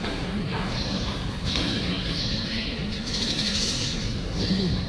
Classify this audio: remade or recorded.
remade